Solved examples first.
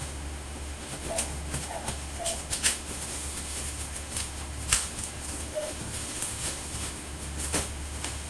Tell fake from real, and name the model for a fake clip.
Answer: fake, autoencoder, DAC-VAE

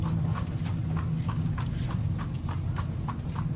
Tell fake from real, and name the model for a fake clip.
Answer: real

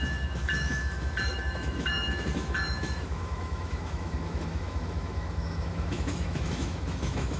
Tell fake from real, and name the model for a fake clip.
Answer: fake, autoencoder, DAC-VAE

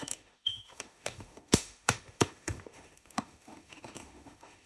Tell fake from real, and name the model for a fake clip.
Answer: fake, autoencoder, DAC-VAE